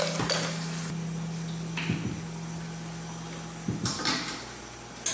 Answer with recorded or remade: recorded